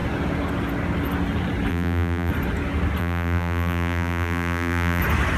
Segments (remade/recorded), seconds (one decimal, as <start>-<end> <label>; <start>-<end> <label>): 0.0-1.7 recorded; 1.7-2.3 remade; 2.3-3.0 recorded; 3.0-5.0 remade; 5.0-5.4 recorded